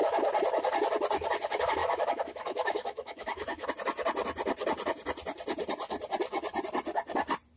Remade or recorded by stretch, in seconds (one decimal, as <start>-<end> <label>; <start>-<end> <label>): 0.0-1.8 recorded; 1.8-3.7 remade; 3.7-7.6 recorded